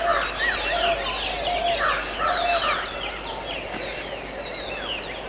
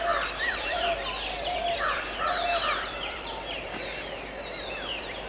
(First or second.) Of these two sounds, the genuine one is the first